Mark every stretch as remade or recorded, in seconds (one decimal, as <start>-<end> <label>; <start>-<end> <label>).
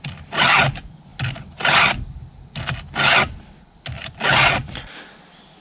0.0-5.6 recorded